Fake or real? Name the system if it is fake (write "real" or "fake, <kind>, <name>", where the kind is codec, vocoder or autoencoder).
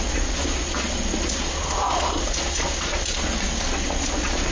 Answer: fake, vocoder, Vocos